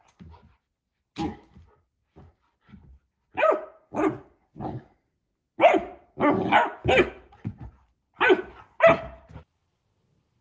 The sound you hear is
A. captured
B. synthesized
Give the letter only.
A